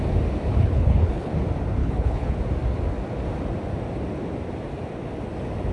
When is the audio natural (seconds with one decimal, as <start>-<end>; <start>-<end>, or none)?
0.0-0.5; 1.3-1.8; 2.4-5.7